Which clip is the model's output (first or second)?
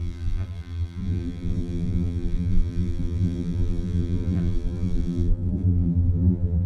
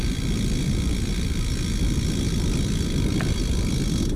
first